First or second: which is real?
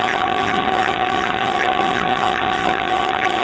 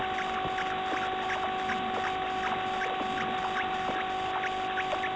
second